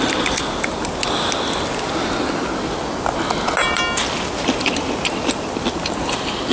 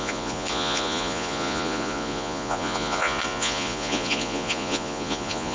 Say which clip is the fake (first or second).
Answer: second